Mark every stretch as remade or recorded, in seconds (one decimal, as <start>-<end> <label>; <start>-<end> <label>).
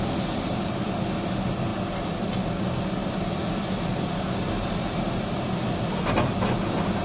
0.0-7.0 recorded